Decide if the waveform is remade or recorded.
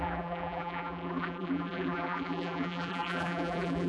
remade